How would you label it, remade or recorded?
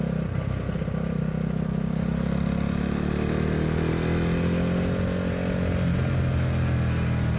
recorded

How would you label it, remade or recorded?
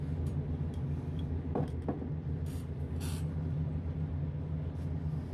recorded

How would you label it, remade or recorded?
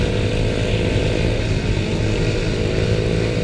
recorded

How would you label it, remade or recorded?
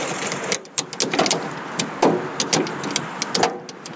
recorded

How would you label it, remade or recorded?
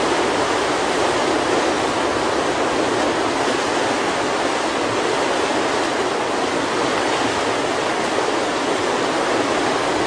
recorded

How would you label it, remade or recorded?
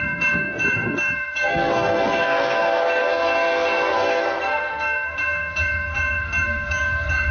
remade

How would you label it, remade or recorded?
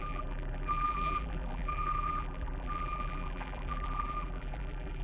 remade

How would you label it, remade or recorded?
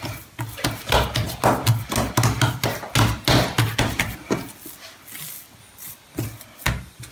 recorded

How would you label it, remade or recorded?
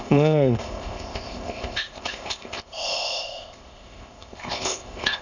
remade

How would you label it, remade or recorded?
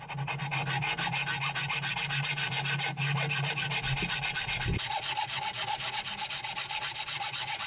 recorded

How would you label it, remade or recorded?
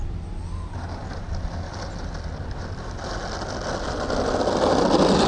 recorded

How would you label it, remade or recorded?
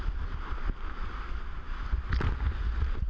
recorded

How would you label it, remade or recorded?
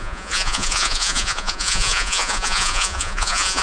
remade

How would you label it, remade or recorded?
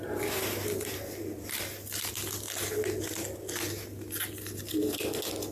recorded